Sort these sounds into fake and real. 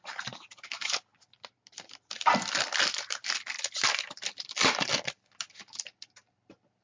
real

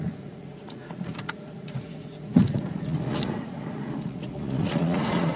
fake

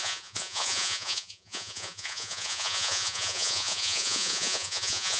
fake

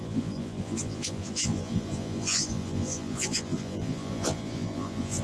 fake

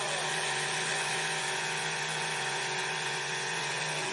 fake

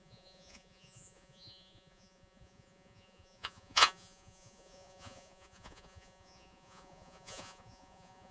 fake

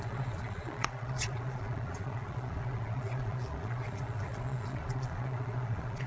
fake